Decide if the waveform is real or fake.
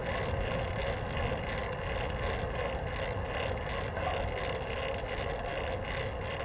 real